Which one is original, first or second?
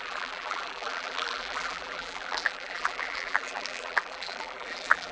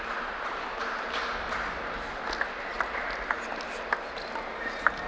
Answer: second